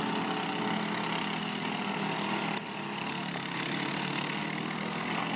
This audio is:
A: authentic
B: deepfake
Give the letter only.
A